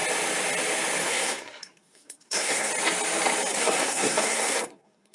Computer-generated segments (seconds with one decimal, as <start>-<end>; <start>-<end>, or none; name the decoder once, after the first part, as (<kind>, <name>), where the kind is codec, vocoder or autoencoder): 1.0-2.7 (codec, SNAC); 3.5-5.1

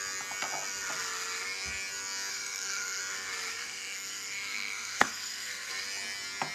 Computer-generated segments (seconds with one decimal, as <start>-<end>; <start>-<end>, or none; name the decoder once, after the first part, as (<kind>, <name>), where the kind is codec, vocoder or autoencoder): 2.3-3.0 (codec, SNAC); 3.5-5.7

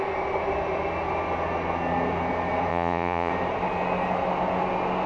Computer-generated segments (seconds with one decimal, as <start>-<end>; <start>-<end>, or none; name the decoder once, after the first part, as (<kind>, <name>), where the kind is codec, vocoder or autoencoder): 2.7-3.3 (vocoder, Vocos)

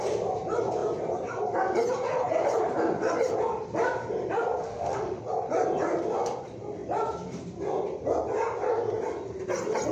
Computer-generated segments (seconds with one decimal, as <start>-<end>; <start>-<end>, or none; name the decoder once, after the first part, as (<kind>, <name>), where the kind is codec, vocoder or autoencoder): 4.6-5.2 (autoencoder, DAC-VAE)